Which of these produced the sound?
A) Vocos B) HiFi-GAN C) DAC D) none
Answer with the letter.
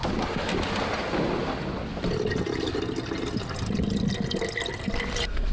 D